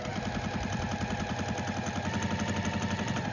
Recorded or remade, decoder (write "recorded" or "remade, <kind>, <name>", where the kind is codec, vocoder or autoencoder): recorded